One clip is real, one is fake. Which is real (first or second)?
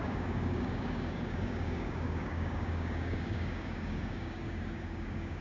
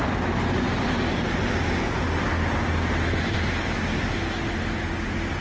second